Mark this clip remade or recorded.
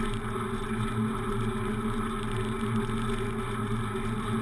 recorded